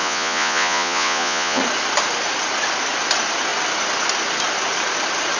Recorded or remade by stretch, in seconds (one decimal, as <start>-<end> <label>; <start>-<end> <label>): 0.0-1.6 remade; 1.6-5.4 recorded